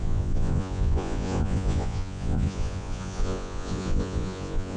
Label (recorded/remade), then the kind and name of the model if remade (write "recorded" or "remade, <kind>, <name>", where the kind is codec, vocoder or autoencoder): remade, vocoder, Vocos